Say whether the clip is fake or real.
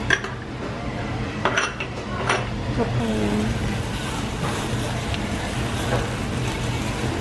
real